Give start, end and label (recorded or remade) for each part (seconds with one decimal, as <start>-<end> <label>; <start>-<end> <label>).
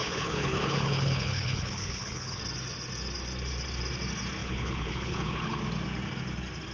0.0-2.4 remade; 2.4-4.4 recorded; 4.4-5.6 remade; 5.6-6.7 recorded